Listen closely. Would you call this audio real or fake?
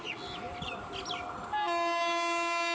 real